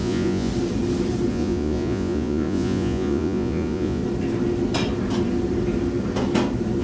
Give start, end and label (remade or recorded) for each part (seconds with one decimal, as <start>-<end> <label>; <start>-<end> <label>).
0.0-0.5 remade; 0.5-1.3 recorded; 1.3-4.0 remade; 4.0-6.8 recorded